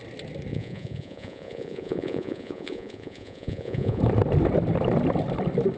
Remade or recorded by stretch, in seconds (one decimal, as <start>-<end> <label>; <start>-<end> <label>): 0.0-0.5 recorded; 0.5-4.0 remade; 4.0-5.8 recorded